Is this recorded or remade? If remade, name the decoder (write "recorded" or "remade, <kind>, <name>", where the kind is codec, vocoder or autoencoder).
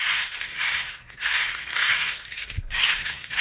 remade, codec, SNAC